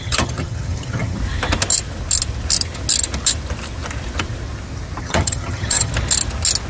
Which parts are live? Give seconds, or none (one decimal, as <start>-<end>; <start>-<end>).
1.2-5.0; 5.9-6.7